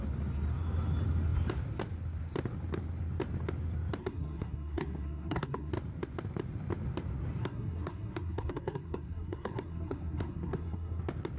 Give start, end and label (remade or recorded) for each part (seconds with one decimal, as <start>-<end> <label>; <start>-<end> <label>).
0.0-4.0 recorded; 4.0-5.7 remade; 5.7-7.4 recorded; 7.4-11.0 remade; 11.0-11.4 recorded